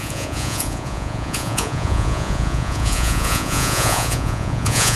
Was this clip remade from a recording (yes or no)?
yes